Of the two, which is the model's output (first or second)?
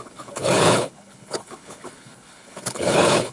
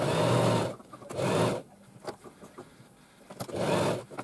first